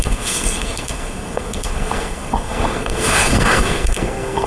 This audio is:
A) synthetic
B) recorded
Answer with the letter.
A